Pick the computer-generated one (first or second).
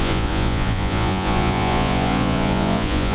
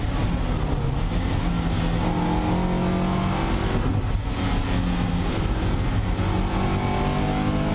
first